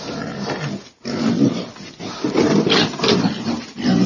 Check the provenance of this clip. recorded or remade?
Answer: recorded